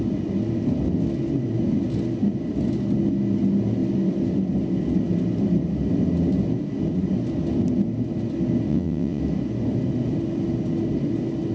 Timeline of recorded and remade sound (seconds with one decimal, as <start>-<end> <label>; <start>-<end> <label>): 0.0-8.7 recorded; 8.7-9.2 remade; 9.2-11.5 recorded